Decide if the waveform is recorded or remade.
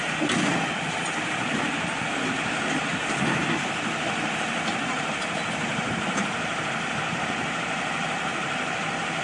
remade